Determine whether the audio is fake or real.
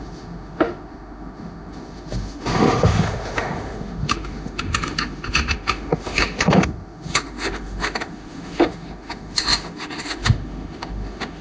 fake